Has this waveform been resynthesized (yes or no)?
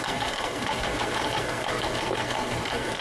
yes